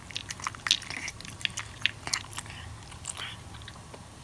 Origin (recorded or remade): recorded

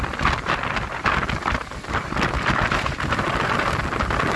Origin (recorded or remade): recorded